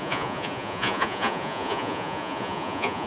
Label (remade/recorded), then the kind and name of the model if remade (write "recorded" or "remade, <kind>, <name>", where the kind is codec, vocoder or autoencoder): remade, vocoder, Vocos